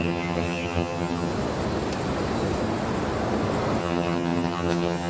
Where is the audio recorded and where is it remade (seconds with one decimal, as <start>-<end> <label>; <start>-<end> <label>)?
0.0-1.3 remade; 1.3-3.8 recorded; 3.8-5.1 remade